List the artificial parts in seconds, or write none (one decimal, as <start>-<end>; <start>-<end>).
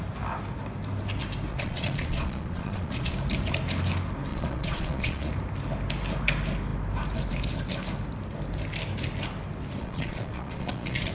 1.5-3.1; 4.3-5.3; 9.8-11.1